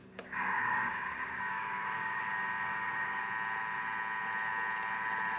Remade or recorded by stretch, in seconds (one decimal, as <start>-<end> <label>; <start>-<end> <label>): 0.0-3.2 remade; 3.2-5.4 recorded